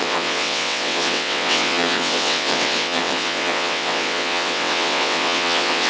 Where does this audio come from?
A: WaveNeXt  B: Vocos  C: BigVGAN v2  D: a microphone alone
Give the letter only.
A